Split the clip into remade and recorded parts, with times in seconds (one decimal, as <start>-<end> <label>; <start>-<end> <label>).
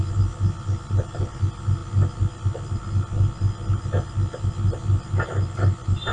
0.0-6.1 recorded